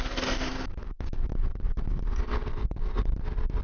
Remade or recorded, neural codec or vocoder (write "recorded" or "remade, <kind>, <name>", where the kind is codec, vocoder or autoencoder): recorded